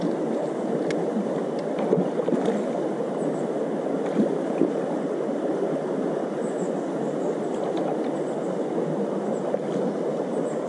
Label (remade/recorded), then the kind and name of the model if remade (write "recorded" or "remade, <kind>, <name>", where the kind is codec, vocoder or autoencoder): recorded